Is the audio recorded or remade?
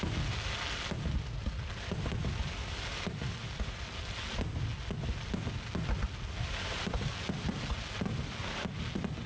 recorded